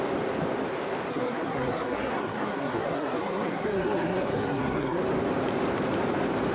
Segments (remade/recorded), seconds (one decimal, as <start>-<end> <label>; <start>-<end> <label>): 0.0-1.1 recorded; 1.1-5.0 remade; 5.0-6.5 recorded